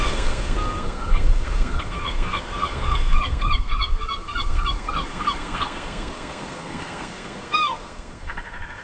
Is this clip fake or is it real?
fake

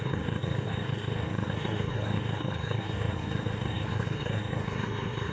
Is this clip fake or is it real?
fake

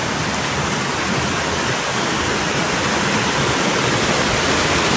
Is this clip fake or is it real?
real